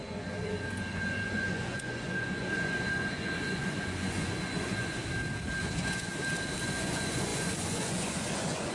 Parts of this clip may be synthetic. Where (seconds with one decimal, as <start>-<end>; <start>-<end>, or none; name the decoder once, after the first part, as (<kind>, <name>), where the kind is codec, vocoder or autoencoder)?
0.0-5.0 (vocoder, Vocos); 5.6-6.1; 6.6-8.7